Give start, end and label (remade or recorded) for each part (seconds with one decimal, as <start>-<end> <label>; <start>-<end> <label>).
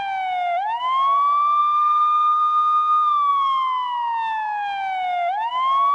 0.0-1.6 recorded; 1.6-2.4 remade; 2.4-5.9 recorded